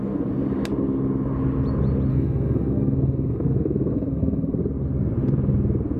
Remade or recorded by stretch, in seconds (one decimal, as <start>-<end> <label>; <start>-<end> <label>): 0.0-2.1 recorded; 2.1-4.6 remade; 4.6-6.0 recorded